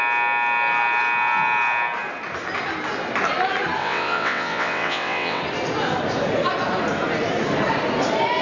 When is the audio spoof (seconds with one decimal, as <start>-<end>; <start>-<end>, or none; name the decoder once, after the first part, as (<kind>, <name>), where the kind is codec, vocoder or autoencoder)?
3.8-5.4 (vocoder, WaveNeXt)